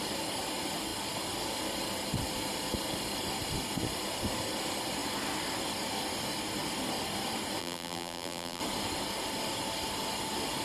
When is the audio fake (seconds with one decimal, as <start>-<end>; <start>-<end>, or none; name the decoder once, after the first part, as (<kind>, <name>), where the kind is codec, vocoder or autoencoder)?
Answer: 7.6-8.6 (vocoder, BigVGAN v2)